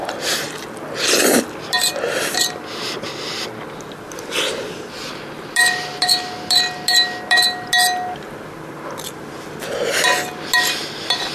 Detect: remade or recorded recorded